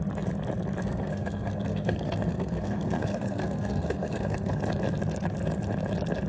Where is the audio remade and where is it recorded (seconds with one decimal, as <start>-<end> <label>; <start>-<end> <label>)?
0.0-0.8 recorded; 0.8-4.6 remade; 4.6-6.3 recorded